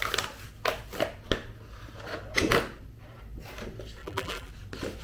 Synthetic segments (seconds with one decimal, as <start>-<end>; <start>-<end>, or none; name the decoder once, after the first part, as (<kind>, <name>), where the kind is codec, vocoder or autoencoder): 4.0-4.5 (vocoder, BigVGAN v2)